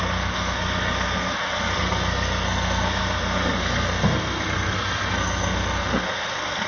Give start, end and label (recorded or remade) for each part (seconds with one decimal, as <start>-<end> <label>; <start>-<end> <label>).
0.0-6.7 remade